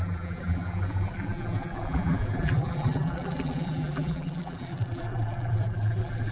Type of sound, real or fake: fake